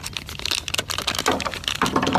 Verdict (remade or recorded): recorded